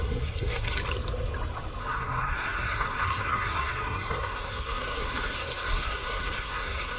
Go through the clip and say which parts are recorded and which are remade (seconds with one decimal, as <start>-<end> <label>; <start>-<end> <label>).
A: 0.0-0.8 remade; 0.8-1.8 recorded; 1.8-7.0 remade